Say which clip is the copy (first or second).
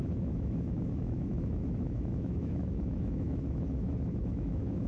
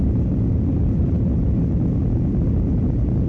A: first